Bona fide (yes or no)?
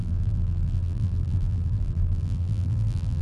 no